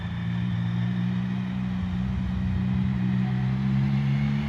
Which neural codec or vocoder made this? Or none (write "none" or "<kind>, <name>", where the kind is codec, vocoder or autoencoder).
none